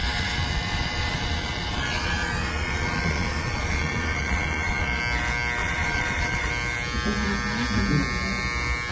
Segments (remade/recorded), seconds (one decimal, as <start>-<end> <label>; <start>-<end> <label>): 0.0-5.0 remade; 5.0-5.6 recorded; 5.6-6.5 remade; 6.5-8.9 recorded